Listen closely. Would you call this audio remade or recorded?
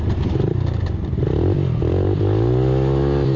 remade